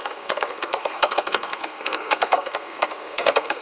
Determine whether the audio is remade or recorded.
remade